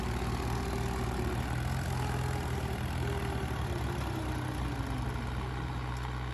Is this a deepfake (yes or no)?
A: no